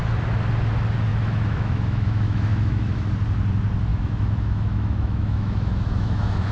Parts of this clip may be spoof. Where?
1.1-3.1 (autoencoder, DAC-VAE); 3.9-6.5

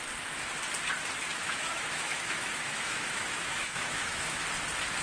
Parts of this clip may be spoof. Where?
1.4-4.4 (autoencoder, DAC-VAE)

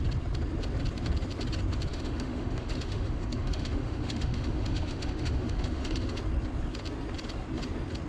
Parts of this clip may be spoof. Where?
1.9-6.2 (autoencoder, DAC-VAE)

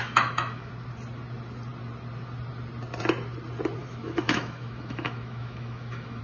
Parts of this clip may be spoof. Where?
0.0-0.7 (autoencoder, DAC-VAE); 3.8-6.2

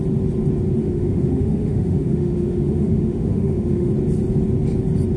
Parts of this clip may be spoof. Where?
0.8-3.9 (autoencoder, DAC-VAE)

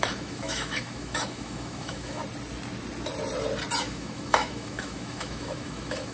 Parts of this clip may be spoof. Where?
0.0-2.2 (autoencoder, DAC-VAE); 3.8-6.1

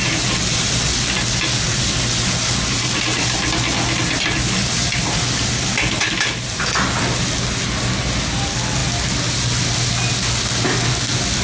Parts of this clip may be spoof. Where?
none